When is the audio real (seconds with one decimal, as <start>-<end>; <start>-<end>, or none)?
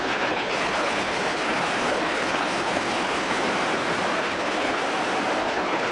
3.4-4.2; 4.8-5.4